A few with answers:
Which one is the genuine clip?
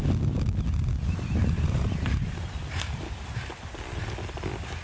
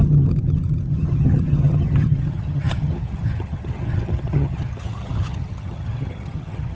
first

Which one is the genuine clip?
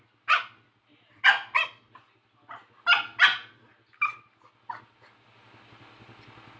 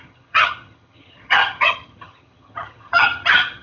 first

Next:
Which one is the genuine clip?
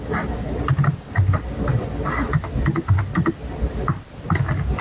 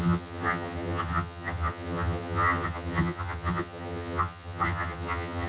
first